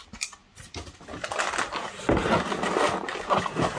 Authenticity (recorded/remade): recorded